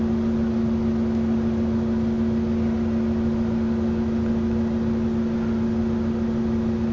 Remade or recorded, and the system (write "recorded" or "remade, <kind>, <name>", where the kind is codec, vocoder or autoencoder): recorded